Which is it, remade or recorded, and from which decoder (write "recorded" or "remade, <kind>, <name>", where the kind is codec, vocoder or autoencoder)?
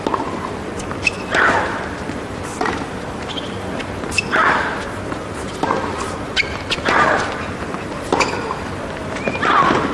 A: recorded